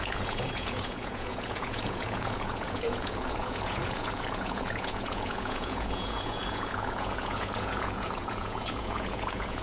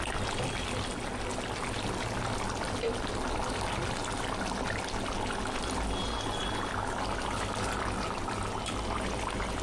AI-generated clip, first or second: first